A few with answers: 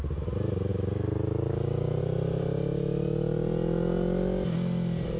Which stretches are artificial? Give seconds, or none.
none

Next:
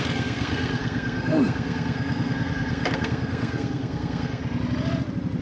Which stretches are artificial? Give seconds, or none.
0.0-4.4 (codec, SNAC)

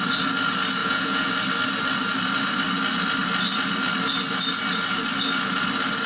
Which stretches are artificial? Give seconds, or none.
0.8-1.3 (vocoder, Vocos)

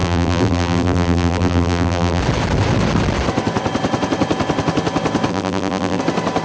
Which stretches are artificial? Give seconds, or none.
0.0-2.2 (vocoder, BigVGAN v2); 5.3-6.0

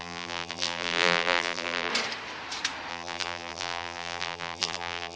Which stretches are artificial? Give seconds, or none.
0.0-1.9 (vocoder, BigVGAN v2); 2.9-5.2

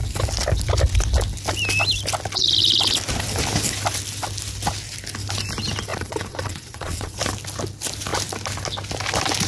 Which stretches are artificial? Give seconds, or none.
5.9-7.2 (vocoder, Vocos)